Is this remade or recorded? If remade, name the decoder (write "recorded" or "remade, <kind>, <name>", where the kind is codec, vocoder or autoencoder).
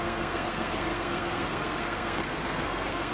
remade, codec, SNAC